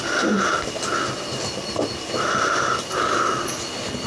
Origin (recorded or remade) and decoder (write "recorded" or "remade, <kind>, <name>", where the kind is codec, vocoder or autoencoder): recorded